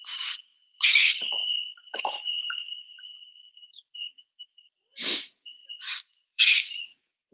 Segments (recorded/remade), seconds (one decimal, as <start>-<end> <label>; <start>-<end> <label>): 0.0-7.3 remade